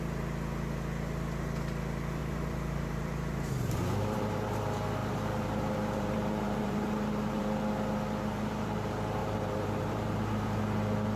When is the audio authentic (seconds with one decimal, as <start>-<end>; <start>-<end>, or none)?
0.0-2.2; 4.6-5.0; 7.4-9.2; 10.6-11.2